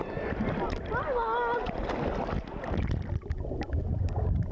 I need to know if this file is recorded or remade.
recorded